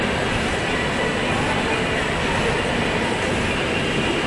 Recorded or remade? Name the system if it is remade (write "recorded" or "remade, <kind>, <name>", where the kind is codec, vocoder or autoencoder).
recorded